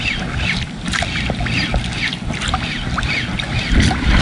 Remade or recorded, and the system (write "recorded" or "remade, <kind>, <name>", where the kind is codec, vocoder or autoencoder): recorded